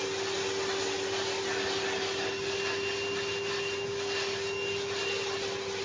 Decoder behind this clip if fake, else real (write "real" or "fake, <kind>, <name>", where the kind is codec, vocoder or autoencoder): real